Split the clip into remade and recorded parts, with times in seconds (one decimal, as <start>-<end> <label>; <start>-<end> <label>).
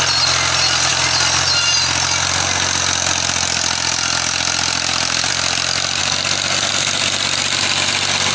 0.0-8.3 recorded